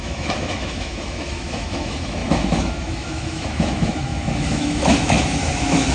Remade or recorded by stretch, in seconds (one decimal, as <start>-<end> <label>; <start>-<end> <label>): 0.0-5.9 remade